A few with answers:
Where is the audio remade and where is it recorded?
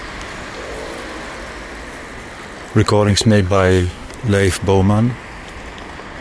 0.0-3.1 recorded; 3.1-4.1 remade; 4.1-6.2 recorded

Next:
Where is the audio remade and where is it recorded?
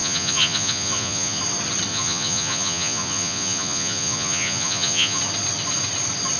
0.0-1.4 remade; 1.4-1.9 recorded; 1.9-5.2 remade; 5.2-6.4 recorded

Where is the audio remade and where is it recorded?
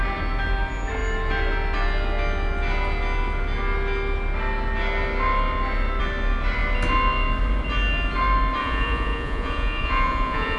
0.0-8.6 recorded; 8.6-10.6 remade